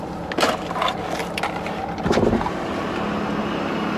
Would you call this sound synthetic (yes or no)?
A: no